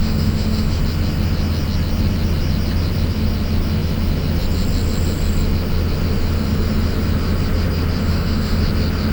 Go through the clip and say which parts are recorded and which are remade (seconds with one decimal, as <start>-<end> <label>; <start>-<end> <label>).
0.0-0.8 remade; 0.8-8.0 recorded; 8.0-8.6 remade; 8.6-9.1 recorded